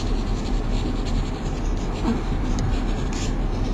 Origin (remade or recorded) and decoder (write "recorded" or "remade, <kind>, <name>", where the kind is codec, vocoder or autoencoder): recorded